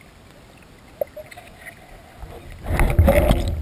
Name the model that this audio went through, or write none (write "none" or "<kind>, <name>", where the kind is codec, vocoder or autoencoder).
none